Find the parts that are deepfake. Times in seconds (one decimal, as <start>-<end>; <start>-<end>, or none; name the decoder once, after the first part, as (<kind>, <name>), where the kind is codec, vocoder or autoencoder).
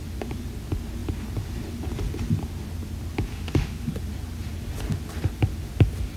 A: 3.3-3.9 (autoencoder, DAC-VAE)